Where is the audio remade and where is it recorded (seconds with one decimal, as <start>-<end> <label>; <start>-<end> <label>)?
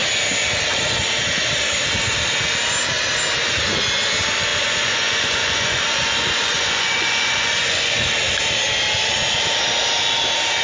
0.0-4.5 recorded; 4.5-8.1 remade; 8.1-10.6 recorded